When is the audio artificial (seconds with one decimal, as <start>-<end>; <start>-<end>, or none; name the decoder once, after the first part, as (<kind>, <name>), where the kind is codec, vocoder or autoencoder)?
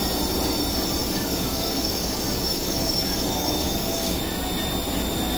1.0-4.2 (codec, DAC)